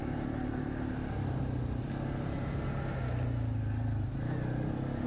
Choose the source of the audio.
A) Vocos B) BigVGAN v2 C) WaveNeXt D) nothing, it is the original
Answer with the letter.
D